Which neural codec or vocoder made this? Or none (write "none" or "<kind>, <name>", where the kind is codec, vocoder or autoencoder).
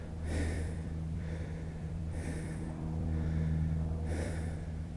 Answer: vocoder, BigVGAN v2